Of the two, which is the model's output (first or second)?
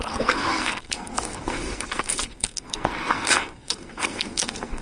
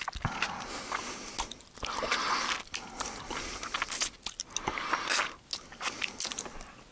first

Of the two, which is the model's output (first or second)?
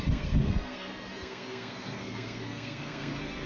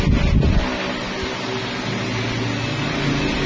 first